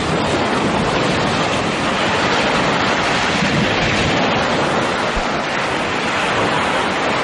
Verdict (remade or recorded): recorded